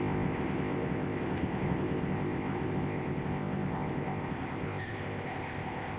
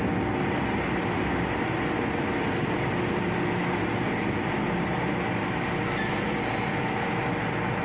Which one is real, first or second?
second